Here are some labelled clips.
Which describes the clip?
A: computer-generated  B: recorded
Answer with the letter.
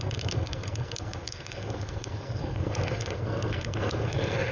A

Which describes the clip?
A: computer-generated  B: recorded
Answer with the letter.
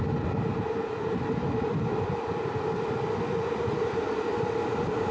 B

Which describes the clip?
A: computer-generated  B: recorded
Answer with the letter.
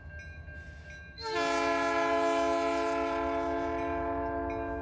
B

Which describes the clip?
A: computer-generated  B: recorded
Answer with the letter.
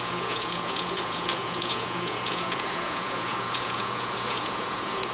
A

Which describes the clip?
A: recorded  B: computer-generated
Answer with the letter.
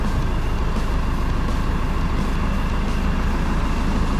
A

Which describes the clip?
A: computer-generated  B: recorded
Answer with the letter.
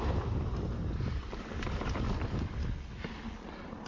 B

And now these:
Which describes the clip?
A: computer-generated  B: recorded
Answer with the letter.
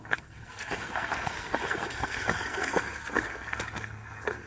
A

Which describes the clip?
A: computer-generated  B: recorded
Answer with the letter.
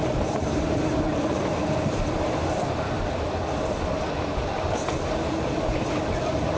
B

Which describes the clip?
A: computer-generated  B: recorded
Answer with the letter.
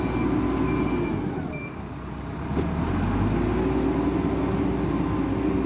B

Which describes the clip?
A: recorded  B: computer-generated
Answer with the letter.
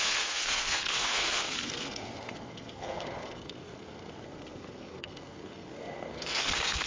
B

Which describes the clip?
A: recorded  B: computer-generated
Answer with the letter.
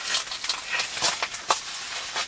A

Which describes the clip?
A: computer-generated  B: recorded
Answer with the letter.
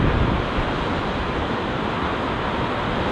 B